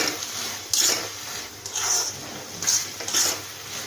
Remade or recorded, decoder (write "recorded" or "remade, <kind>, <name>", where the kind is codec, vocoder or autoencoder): recorded